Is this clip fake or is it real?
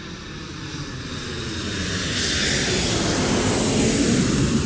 real